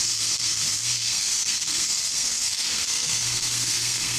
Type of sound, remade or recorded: remade